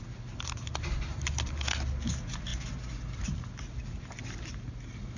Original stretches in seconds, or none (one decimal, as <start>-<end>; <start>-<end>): 0.0-5.2